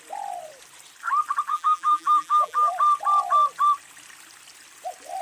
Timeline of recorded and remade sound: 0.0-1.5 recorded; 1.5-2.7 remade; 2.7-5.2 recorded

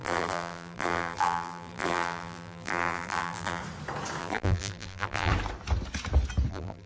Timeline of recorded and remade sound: 0.0-3.6 remade; 3.6-4.2 recorded; 4.2-5.3 remade; 5.3-6.5 recorded; 6.5-6.9 remade

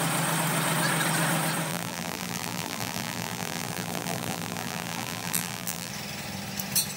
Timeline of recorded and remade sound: 0.0-1.7 recorded; 1.7-5.9 remade; 5.9-7.0 recorded

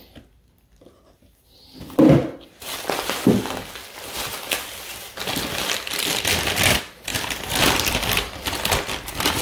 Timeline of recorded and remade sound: 0.0-7.1 recorded; 7.1-8.6 remade; 8.6-9.4 recorded

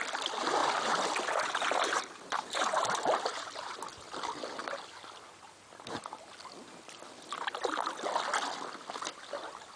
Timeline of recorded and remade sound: 0.0-0.6 recorded; 0.6-3.8 remade; 3.8-9.8 recorded